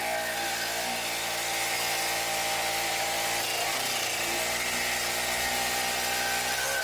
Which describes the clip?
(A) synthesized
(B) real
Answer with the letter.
B